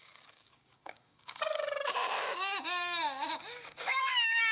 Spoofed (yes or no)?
yes